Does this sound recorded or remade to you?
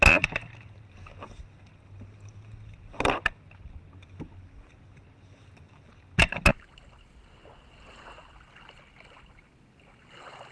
recorded